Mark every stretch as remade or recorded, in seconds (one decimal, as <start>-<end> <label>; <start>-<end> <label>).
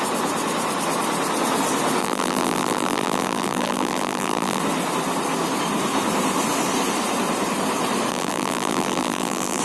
0.0-2.0 recorded; 2.0-4.6 remade; 4.6-8.1 recorded; 8.1-9.6 remade